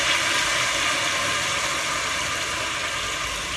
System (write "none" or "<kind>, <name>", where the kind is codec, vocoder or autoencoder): none